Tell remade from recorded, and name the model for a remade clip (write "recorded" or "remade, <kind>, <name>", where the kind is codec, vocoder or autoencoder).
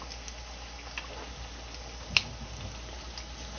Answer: recorded